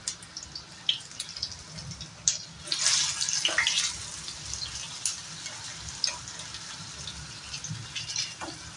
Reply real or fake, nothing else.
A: real